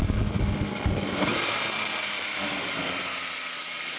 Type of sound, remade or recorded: recorded